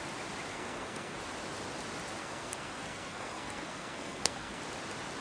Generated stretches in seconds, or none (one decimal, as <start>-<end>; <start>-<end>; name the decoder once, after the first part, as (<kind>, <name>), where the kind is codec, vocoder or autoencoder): 0.5-1.2 (codec, SNAC); 2.2-4.6

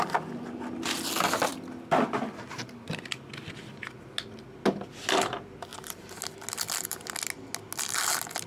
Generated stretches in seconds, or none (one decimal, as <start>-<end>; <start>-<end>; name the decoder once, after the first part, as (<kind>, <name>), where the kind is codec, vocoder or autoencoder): none

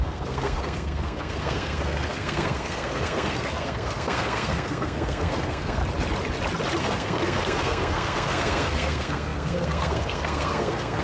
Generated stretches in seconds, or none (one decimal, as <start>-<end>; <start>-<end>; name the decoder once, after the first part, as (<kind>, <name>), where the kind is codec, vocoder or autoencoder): 0.0-5.8 (codec, SNAC); 6.8-11.0

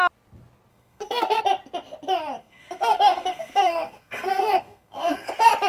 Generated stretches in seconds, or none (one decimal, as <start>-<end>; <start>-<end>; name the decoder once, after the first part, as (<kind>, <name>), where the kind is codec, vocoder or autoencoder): 0.7-1.4 (codec, SNAC); 2.4-5.3

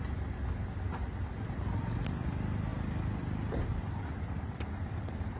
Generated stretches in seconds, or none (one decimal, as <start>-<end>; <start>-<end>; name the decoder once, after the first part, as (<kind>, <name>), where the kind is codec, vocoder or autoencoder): none

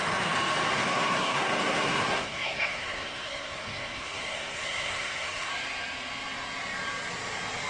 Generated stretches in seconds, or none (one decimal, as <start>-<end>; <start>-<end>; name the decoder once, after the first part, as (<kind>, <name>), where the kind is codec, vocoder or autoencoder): 0.7-5.5 (codec, SNAC)

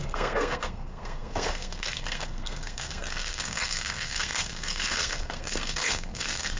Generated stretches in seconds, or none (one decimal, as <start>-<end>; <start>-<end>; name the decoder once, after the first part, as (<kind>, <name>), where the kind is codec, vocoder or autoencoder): 0.0-6.6 (codec, SNAC)